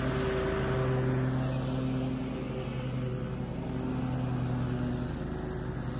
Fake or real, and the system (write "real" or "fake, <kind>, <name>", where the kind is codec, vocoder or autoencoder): real